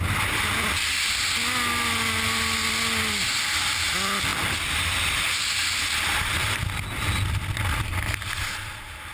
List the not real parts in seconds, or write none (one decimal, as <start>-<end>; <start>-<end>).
6.4-7.1